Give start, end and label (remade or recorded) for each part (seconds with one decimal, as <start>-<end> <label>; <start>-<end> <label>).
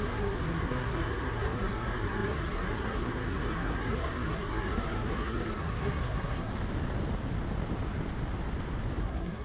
0.0-6.5 remade; 6.5-9.0 recorded; 9.0-9.4 remade